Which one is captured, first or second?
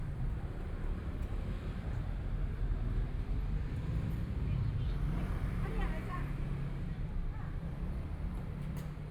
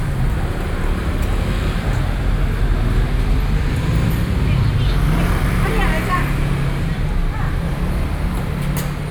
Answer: second